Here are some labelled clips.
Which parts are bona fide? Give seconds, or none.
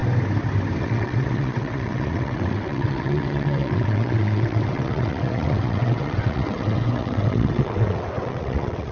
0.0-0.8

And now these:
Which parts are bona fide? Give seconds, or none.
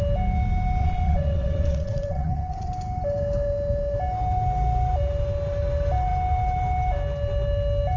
0.0-0.8; 2.7-8.0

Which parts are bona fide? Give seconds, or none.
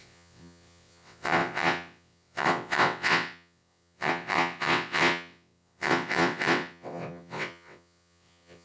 none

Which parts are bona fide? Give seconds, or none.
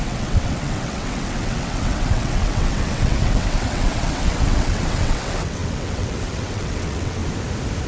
7.2-7.9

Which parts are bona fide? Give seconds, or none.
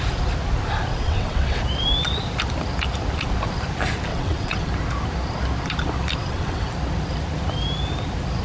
0.0-0.9; 1.6-4.1; 4.7-6.2; 6.7-8.4